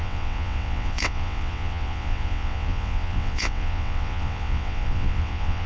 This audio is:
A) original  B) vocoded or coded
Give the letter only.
B